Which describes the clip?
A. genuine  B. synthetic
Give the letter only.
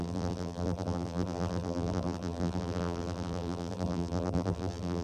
B